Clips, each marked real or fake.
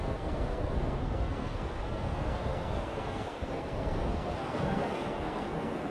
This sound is fake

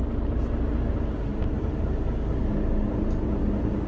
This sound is real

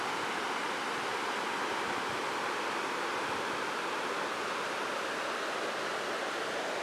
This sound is real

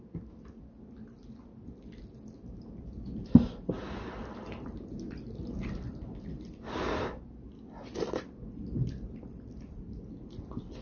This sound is fake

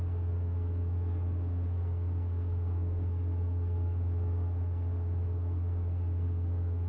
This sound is fake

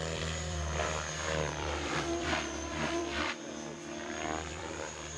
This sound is fake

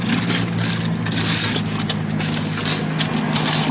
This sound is real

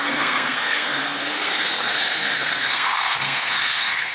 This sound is fake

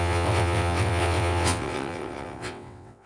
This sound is fake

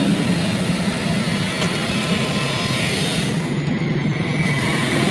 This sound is fake